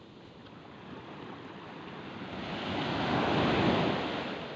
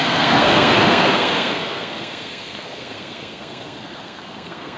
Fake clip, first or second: second